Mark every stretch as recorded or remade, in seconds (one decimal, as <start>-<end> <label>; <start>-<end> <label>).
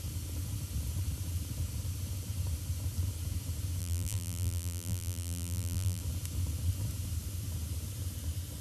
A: 0.0-3.8 recorded; 3.8-6.0 remade; 6.0-8.6 recorded